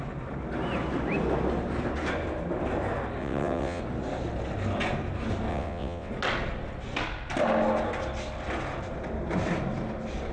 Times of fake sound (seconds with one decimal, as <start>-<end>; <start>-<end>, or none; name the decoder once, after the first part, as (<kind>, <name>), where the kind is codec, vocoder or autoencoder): 3.2-3.8 (vocoder, WaveNeXt); 5.5-6.1